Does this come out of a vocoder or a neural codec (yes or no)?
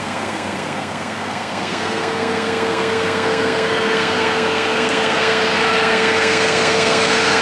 yes